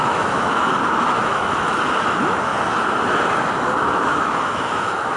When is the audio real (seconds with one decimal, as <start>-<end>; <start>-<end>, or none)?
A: 0.7-1.2; 2.5-3.9